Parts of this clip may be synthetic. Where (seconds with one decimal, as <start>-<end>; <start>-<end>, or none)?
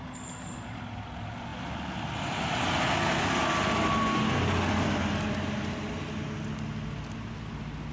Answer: none